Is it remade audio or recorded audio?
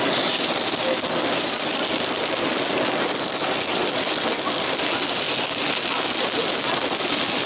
recorded